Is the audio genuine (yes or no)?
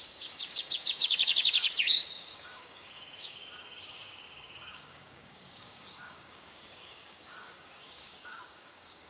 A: no